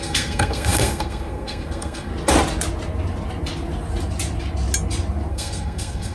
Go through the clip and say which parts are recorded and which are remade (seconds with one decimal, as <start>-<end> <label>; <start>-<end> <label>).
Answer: 0.0-2.1 remade; 2.1-5.3 recorded; 5.3-6.1 remade